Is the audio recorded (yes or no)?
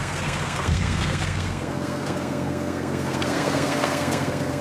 no